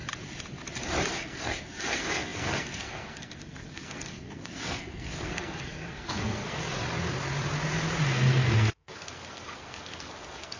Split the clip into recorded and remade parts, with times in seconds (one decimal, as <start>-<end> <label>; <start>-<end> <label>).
0.0-1.1 recorded; 1.1-6.6 remade; 6.6-8.1 recorded; 8.1-10.6 remade